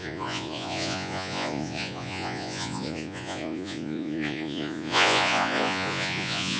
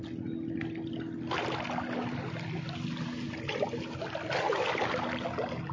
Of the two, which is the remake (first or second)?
first